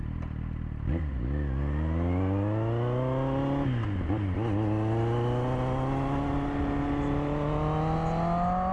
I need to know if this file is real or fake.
real